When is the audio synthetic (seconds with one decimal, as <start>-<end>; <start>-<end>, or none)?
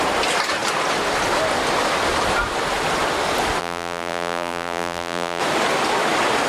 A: 3.6-5.4